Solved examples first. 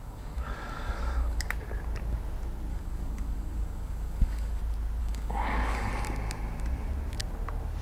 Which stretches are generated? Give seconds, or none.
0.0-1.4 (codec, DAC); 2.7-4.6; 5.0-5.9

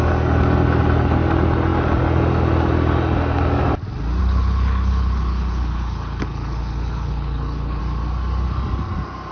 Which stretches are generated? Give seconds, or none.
4.2-7.8 (codec, HILCodec)